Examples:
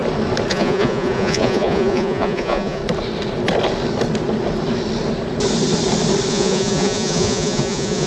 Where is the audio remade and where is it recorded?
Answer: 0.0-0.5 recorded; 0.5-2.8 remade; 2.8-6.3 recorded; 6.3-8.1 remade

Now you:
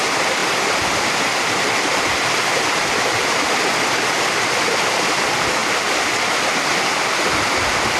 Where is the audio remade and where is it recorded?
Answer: 0.0-8.0 remade